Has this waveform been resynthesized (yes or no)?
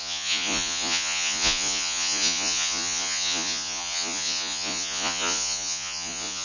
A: yes